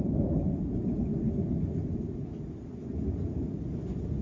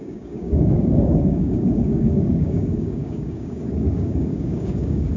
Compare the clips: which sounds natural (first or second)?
first